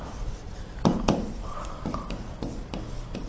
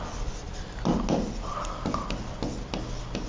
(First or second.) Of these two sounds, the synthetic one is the first